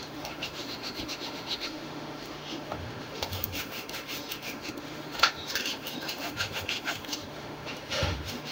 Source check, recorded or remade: remade